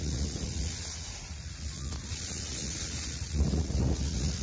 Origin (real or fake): fake